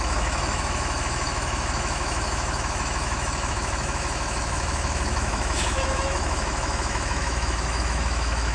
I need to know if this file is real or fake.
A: fake